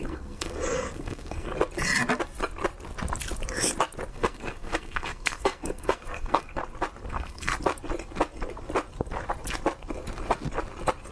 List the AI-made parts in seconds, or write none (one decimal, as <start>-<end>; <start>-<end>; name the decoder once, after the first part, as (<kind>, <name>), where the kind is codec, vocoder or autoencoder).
0.0-1.5 (codec, SNAC); 4.1-6.6; 7.1-7.5

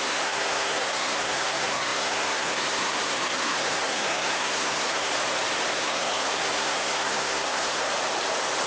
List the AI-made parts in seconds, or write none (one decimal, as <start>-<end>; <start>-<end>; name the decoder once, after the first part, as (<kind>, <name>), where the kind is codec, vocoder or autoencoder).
0.0-5.1 (codec, SNAC); 5.7-7.9

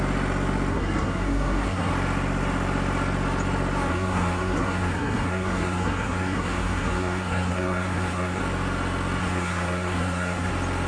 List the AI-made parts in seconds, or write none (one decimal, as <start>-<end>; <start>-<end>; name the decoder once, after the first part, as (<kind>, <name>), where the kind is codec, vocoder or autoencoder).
0.7-1.9 (codec, SNAC); 3.9-8.4; 9.2-10.5

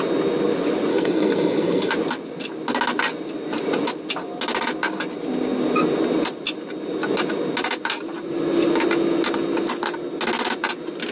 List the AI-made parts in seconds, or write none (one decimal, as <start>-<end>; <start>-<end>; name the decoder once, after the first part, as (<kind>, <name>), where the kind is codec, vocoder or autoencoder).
0.9-1.9 (codec, SNAC)

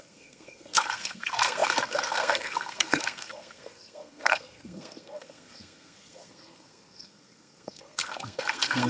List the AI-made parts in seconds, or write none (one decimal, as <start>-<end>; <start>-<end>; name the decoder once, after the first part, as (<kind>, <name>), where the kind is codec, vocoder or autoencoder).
0.0-8.9 (codec, SNAC)

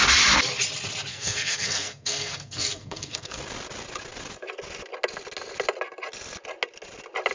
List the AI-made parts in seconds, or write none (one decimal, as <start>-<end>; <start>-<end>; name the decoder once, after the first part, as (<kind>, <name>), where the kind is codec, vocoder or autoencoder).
1.1-3.4 (codec, SNAC)

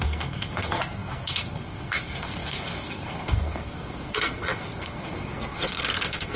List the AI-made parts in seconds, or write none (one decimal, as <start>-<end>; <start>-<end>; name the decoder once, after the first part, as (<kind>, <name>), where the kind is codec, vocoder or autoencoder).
0.0-6.4 (codec, SNAC)